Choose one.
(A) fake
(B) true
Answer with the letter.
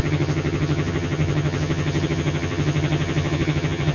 A